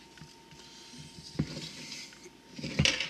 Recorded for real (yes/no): yes